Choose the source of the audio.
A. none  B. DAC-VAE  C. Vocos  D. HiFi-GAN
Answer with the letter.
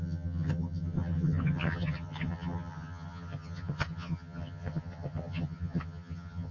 D